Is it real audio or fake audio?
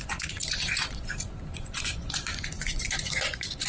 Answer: fake